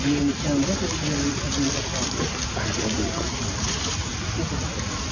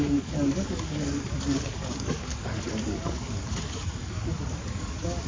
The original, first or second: first